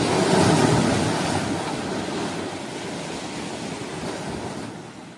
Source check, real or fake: real